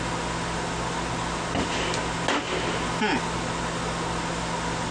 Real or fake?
real